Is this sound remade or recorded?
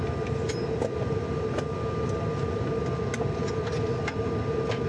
recorded